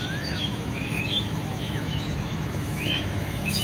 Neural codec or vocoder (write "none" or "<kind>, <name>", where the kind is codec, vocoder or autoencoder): autoencoder, DAC-VAE